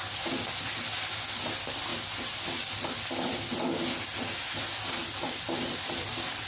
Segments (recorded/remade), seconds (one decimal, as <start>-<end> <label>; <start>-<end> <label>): 0.0-6.5 recorded